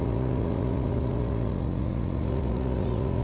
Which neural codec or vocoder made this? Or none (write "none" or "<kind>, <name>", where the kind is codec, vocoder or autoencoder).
vocoder, Vocos